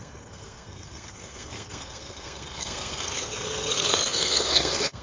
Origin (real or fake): fake